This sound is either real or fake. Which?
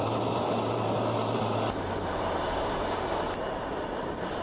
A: fake